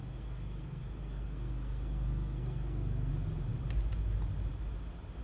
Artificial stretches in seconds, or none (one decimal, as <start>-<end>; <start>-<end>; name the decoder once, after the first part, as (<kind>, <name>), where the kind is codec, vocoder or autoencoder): 0.0-3.1 (codec, SNAC)

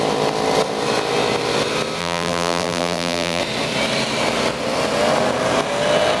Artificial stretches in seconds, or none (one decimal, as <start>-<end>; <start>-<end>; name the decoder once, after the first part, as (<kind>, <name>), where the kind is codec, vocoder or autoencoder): 2.0-3.4 (vocoder, BigVGAN v2)

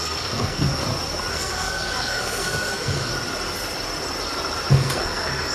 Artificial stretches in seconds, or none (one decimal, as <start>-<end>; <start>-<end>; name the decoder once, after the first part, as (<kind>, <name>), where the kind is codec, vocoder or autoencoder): 0.0-0.8 (codec, SNAC); 1.3-3.1; 4.7-5.5

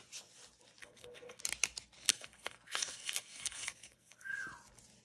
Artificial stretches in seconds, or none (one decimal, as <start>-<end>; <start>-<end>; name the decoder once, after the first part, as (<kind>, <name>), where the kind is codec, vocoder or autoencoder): 0.8-1.4 (codec, SNAC); 2.1-4.3

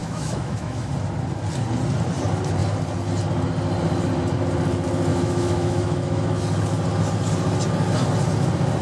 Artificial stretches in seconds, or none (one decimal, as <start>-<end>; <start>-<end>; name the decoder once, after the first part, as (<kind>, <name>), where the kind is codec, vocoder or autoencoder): 0.0-0.9 (autoencoder, DAC-VAE); 5.1-6.4

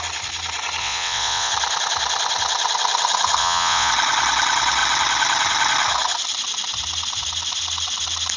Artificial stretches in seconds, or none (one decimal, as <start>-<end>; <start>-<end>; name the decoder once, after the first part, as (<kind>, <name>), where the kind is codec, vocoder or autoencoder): 0.8-1.5 (vocoder, WaveNeXt); 3.4-3.9

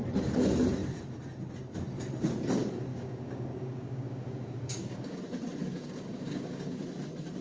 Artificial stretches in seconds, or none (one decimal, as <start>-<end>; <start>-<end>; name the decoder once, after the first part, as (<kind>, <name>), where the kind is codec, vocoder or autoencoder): 2.9-5.2 (codec, DAC); 5.7-6.8